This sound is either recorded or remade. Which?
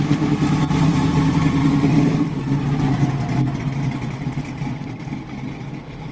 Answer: recorded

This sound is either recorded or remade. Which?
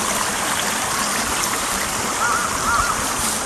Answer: recorded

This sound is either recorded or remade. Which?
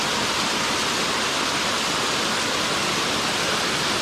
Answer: recorded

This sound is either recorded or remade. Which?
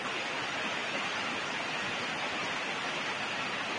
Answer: recorded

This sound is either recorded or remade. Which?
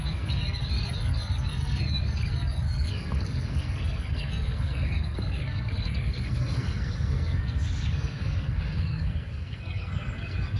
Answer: remade